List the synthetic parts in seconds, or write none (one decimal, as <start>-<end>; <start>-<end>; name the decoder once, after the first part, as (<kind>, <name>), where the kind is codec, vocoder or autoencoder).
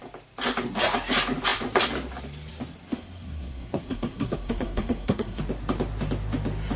2.9-5.4 (codec, SNAC)